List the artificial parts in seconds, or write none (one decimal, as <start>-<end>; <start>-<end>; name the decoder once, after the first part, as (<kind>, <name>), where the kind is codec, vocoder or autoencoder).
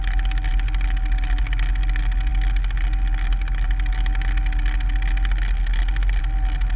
none